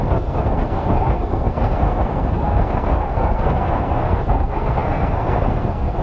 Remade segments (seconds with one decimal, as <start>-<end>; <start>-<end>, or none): 0.0-6.0